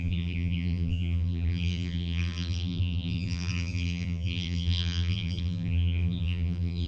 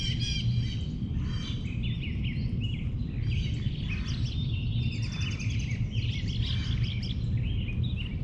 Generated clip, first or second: first